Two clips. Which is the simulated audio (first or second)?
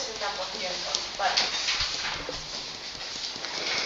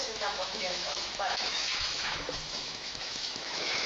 second